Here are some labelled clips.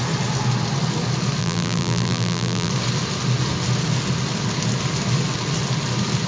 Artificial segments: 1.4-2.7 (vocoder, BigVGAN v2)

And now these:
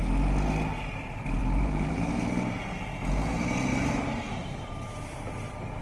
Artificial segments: 1.4-2.2 (vocoder, BigVGAN v2); 3.7-4.6

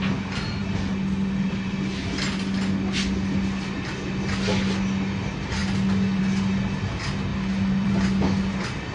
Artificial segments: 7.3-7.9 (vocoder, BigVGAN v2)

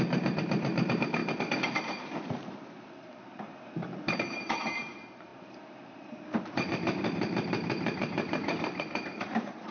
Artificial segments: 0.0-1.2 (vocoder, BigVGAN v2); 1.8-9.7

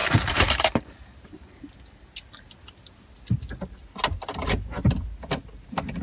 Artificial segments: 0.0-1.6 (vocoder, BigVGAN v2)